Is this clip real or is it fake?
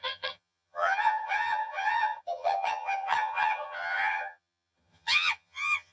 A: fake